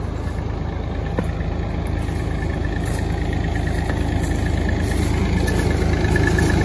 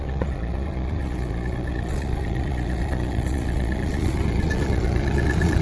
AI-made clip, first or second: second